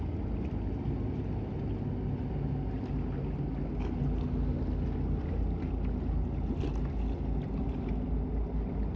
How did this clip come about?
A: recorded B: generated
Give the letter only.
A